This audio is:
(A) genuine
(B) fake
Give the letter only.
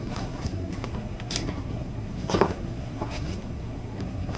B